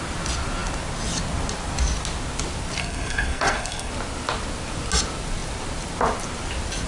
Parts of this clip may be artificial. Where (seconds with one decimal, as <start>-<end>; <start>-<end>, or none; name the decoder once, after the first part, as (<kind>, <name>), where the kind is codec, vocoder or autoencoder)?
2.8-3.9 (codec, SNAC)